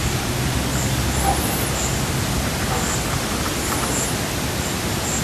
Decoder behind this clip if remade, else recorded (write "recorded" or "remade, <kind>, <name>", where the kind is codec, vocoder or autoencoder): recorded